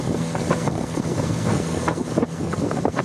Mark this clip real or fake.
fake